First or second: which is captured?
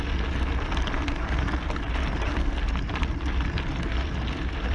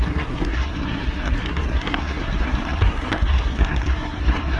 first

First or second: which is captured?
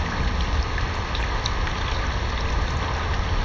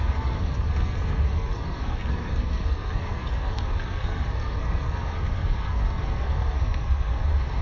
first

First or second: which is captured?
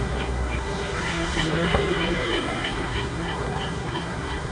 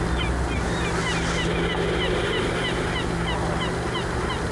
second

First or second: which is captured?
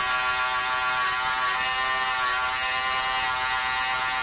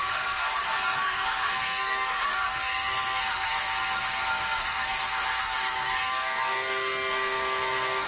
first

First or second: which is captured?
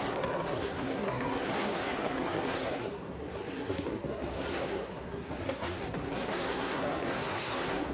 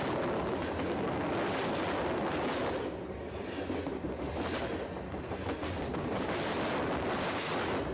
second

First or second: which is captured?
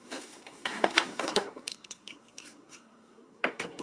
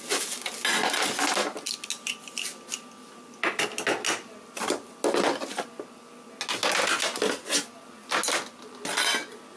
second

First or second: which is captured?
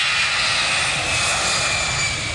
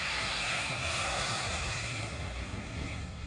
first